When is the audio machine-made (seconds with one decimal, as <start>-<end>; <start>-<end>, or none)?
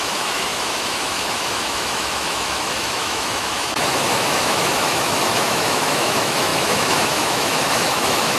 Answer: 0.0-8.4